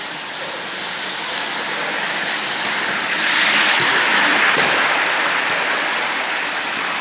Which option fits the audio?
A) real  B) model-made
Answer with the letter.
A